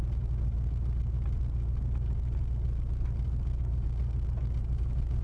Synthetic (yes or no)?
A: no